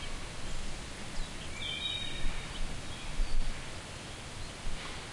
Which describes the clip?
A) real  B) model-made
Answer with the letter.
A